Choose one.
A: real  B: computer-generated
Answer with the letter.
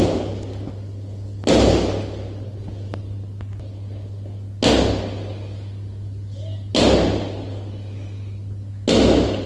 A